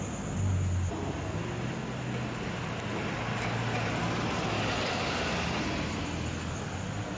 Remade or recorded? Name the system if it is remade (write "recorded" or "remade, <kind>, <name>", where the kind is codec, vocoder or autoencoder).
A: recorded